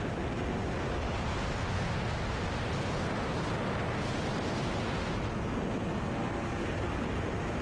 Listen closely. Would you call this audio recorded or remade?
recorded